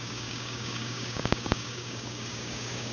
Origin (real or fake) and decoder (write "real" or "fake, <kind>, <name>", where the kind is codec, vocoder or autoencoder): fake, codec, DAC